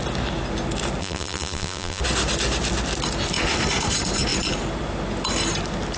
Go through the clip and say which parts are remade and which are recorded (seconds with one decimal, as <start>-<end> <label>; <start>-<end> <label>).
0.0-1.0 recorded; 1.0-2.0 remade; 2.0-6.0 recorded